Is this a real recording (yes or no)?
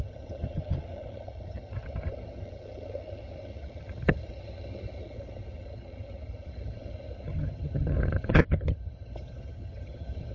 no